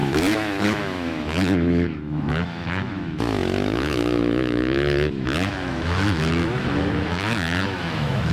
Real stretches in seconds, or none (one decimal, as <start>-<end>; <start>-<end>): none